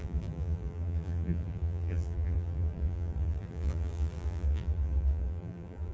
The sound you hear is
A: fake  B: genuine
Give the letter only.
A